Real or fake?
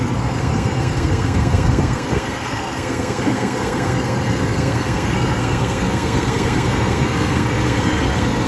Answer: fake